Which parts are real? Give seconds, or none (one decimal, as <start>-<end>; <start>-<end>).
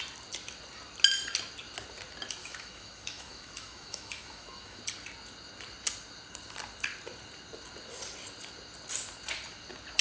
0.0-2.4; 4.8-10.0